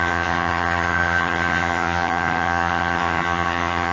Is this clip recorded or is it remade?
remade